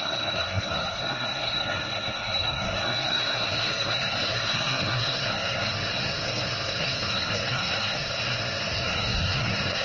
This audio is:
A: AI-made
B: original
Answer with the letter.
A